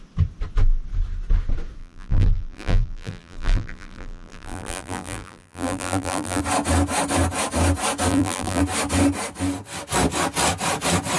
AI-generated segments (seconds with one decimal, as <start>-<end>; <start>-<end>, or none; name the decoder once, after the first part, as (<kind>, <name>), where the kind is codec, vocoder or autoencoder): 1.8-6.4 (vocoder, BigVGAN v2); 8.1-8.6

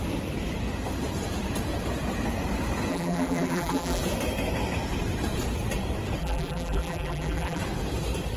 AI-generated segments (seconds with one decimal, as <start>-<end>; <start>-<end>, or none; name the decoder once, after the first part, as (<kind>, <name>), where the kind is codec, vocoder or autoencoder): 2.9-4.0 (vocoder, BigVGAN v2); 6.2-7.6

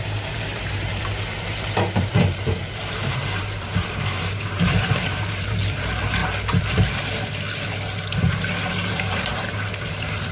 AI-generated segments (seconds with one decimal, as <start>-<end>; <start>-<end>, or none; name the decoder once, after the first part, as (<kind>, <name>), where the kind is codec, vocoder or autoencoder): 0.0-6.2 (vocoder, BigVGAN v2); 8.7-10.3

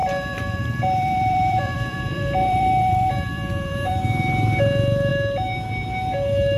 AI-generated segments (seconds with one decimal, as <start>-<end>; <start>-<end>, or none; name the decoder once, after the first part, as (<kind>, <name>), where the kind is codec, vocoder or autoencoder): 0.0-4.0 (vocoder, BigVGAN v2)

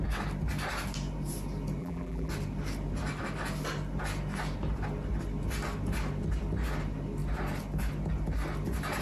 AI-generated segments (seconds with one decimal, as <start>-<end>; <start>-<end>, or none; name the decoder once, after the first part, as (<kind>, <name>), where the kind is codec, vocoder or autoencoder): 1.8-2.3 (vocoder, BigVGAN v2)

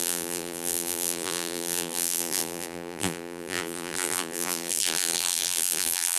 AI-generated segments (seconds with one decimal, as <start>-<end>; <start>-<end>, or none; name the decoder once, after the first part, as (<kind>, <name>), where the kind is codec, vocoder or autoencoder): 0.0-6.2 (vocoder, BigVGAN v2)

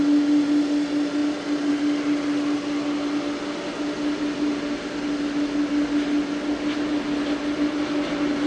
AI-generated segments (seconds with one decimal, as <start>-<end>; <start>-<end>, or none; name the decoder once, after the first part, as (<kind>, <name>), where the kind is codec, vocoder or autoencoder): none